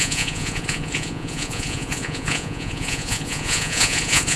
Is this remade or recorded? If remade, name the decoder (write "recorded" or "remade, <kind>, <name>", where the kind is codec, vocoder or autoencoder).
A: remade, vocoder, Vocos